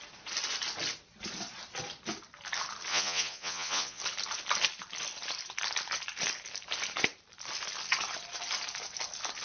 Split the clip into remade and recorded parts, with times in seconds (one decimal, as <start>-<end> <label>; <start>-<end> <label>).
0.0-2.9 recorded; 2.9-4.0 remade; 4.0-9.4 recorded